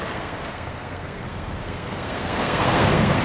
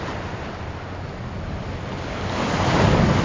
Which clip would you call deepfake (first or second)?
first